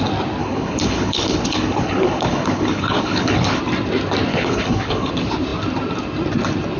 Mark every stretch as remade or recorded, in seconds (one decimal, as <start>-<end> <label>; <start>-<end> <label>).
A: 0.0-0.4 recorded; 0.4-3.6 remade; 3.6-4.3 recorded; 4.3-5.1 remade; 5.1-6.8 recorded